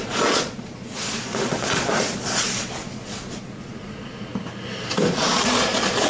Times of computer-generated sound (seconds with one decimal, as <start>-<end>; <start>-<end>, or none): 0.0-4.3; 5.1-6.1